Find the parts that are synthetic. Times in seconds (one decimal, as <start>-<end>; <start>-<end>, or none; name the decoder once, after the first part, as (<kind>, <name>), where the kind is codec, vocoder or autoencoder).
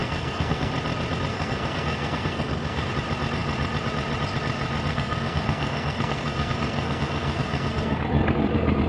0.0-0.7 (codec, SNAC); 1.3-2.9; 4.9-8.0